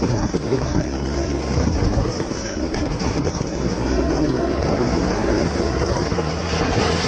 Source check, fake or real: fake